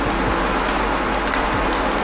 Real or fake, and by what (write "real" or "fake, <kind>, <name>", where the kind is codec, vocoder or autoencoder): real